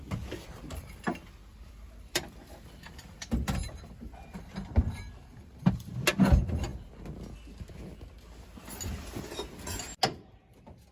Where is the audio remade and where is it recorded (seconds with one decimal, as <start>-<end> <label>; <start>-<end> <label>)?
0.0-1.5 recorded; 1.5-5.9 remade; 5.9-10.9 recorded